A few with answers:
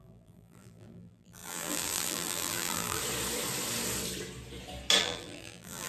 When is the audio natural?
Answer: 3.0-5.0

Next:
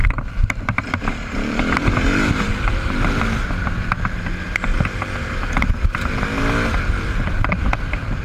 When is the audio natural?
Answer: 3.2-8.2